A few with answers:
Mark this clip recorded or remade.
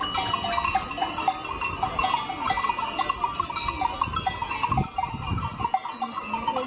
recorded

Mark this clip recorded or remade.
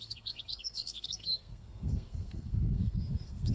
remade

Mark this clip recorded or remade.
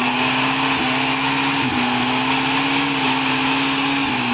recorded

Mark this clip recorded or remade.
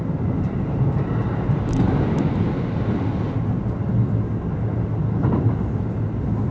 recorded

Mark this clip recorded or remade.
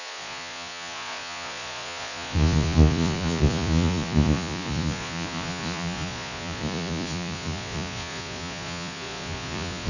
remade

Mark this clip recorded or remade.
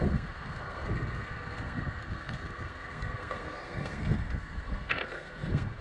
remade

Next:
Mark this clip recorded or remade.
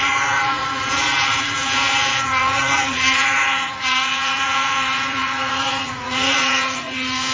remade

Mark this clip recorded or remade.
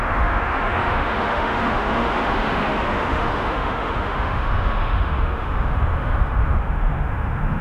remade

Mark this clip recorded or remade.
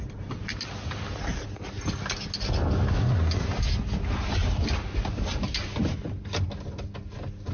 recorded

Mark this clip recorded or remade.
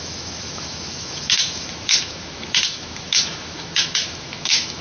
remade